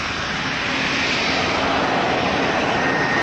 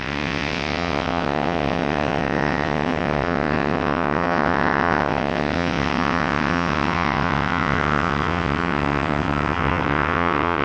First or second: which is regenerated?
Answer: second